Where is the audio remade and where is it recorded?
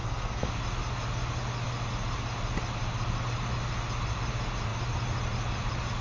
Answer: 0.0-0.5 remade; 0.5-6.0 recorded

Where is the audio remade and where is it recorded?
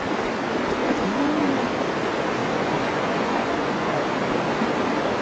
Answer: 0.0-0.8 recorded; 0.8-1.5 remade; 1.5-2.4 recorded; 2.4-3.9 remade; 3.9-5.2 recorded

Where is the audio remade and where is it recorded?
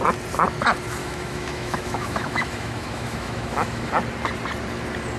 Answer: 0.0-1.0 recorded; 1.0-3.9 remade; 3.9-5.2 recorded